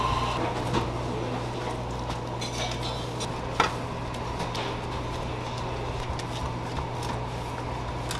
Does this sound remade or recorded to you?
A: recorded